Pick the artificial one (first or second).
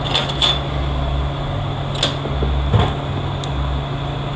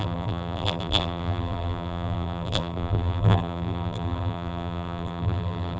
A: second